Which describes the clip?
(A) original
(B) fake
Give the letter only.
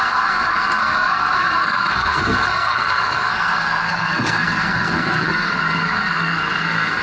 B